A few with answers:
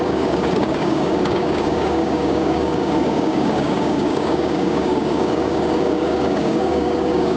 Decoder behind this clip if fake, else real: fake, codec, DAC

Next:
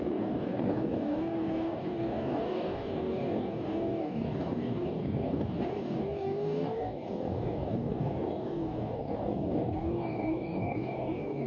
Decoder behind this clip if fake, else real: fake, codec, DAC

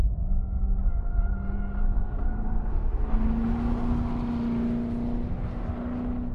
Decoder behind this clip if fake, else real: real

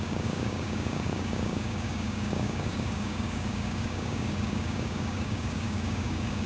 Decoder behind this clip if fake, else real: fake, codec, DAC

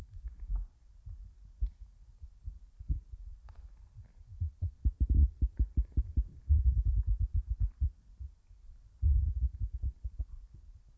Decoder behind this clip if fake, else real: real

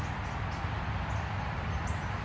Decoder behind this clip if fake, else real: real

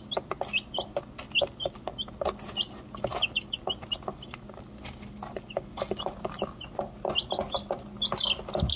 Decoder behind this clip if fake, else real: real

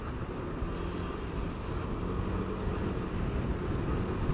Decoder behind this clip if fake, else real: real